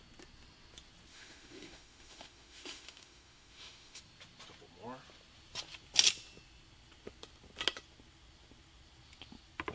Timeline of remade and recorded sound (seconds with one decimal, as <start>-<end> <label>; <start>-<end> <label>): 0.0-1.1 recorded; 1.1-4.0 remade; 4.0-9.7 recorded